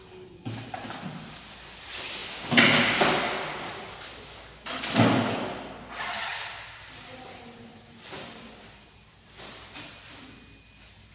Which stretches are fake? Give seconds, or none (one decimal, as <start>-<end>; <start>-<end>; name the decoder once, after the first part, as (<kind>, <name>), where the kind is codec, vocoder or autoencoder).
none